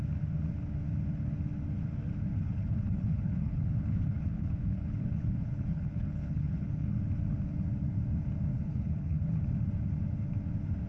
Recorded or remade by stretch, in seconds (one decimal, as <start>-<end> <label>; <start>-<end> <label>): 0.0-2.3 recorded; 2.3-7.0 remade; 7.0-8.5 recorded; 8.5-9.4 remade; 9.4-10.9 recorded